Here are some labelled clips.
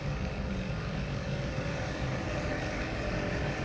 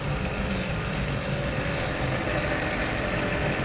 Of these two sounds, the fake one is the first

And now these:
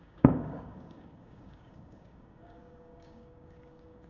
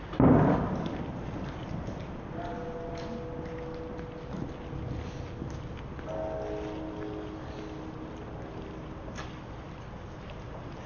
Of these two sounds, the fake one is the first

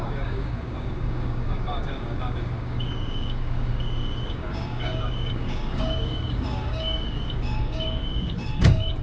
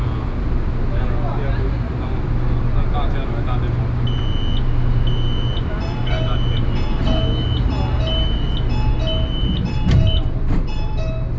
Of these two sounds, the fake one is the first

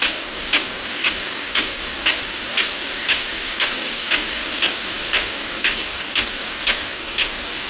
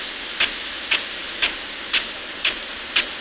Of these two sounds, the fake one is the first